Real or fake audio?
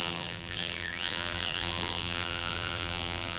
fake